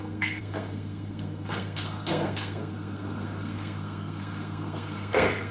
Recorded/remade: remade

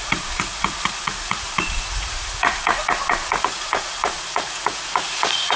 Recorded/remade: remade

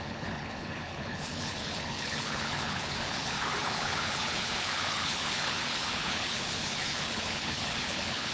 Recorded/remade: remade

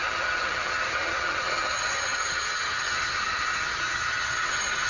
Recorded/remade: remade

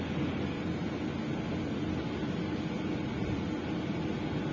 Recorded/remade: recorded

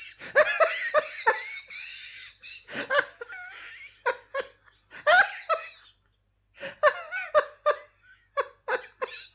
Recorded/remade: recorded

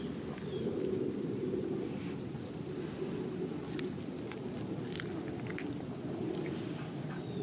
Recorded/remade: recorded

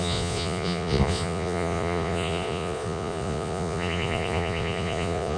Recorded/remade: remade